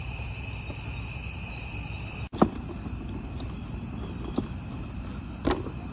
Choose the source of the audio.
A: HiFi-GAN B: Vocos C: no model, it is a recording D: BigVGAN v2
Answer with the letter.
C